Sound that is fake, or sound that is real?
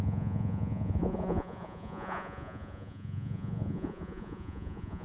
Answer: fake